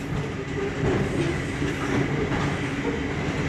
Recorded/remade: recorded